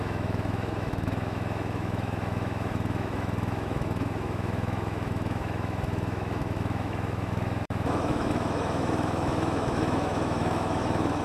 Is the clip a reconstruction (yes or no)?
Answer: yes